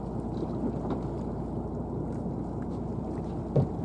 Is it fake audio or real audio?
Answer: real